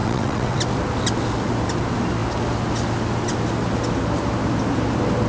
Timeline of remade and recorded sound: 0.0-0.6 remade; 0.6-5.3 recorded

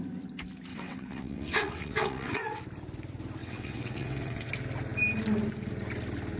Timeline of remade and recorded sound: 0.0-0.7 recorded; 0.7-2.6 remade; 2.6-3.4 recorded; 3.4-4.5 remade; 4.5-6.4 recorded

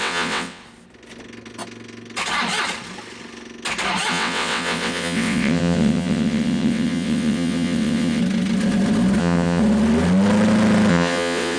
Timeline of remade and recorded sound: 0.0-0.6 remade; 0.6-4.1 recorded; 4.1-8.2 remade; 8.2-9.2 recorded; 9.2-9.6 remade; 9.6-10.9 recorded; 10.9-11.6 remade

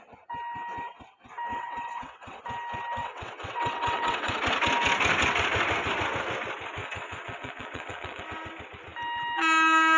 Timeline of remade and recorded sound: 0.0-1.5 recorded; 1.5-2.4 remade; 2.4-3.0 recorded; 3.0-4.4 remade; 4.4-6.8 recorded; 6.8-8.2 remade; 8.2-10.0 recorded

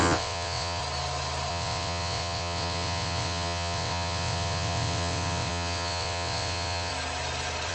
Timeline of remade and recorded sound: 0.0-0.8 remade; 0.8-1.5 recorded; 1.5-6.9 remade; 6.9-7.7 recorded